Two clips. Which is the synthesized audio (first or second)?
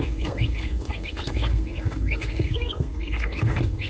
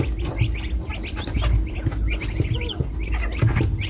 first